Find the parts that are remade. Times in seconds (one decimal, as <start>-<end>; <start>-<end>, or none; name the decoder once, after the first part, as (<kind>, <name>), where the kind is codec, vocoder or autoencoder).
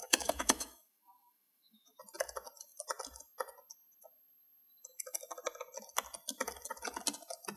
0.0-2.0 (autoencoder, DAC-VAE)